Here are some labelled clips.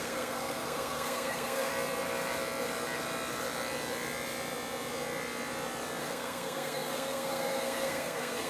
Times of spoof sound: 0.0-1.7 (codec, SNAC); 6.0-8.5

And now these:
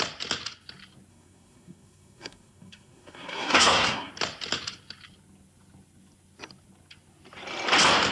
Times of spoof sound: 1.1-4.1 (codec, SNAC)

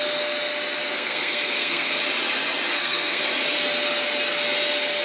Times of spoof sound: 0.8-2.0 (codec, SNAC); 2.7-3.2

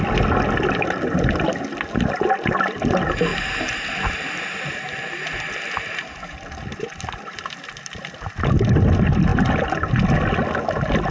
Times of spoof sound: none